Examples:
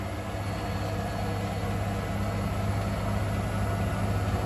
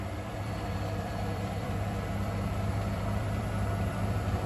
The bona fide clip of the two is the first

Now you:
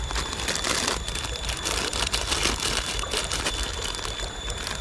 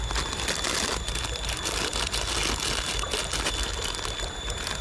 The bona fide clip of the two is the second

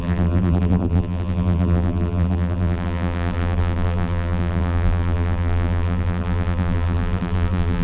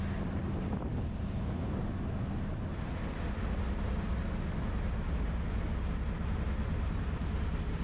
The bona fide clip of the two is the second